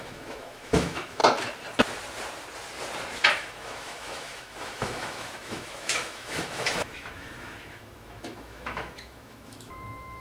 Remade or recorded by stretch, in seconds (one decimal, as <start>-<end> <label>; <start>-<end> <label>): 0.0-1.2 remade; 1.2-3.3 recorded; 3.3-10.2 remade